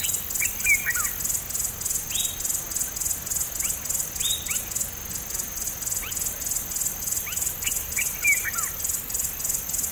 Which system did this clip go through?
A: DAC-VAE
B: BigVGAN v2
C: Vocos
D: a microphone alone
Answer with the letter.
D